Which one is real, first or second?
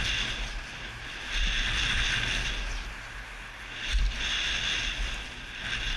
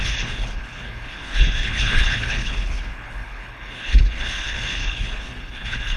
first